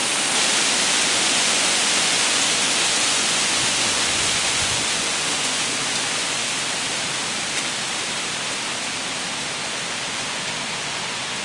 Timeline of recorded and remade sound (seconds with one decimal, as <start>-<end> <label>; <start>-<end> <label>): 0.0-0.9 recorded; 0.9-6.4 remade; 6.4-9.6 recorded; 9.6-11.4 remade